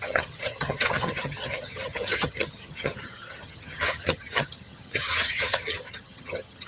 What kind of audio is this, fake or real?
fake